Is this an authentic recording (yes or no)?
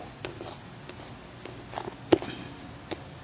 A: yes